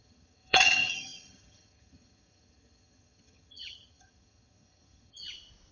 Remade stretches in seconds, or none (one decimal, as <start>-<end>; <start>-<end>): 0.0-5.2